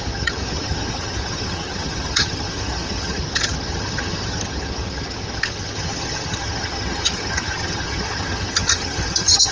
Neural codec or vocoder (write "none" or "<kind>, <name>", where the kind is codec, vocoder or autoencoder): vocoder, HiFi-GAN